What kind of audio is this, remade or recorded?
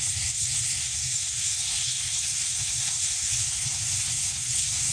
remade